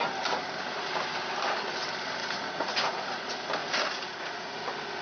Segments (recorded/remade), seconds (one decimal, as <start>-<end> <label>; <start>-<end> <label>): 0.0-2.2 recorded; 2.2-3.2 remade; 3.2-3.6 recorded; 3.6-4.6 remade; 4.6-5.0 recorded